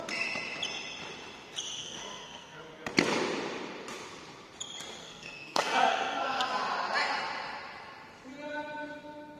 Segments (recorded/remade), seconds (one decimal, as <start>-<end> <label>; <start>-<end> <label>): 0.0-1.8 recorded; 1.8-2.6 remade; 2.6-5.0 recorded; 5.0-6.5 remade; 6.5-9.4 recorded